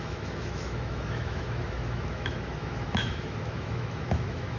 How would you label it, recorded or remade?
remade